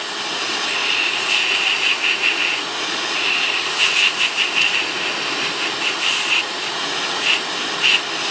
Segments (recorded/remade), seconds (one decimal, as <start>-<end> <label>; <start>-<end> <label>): 0.0-0.8 recorded; 0.8-5.1 remade; 5.1-6.8 recorded; 6.8-7.3 remade; 7.3-8.3 recorded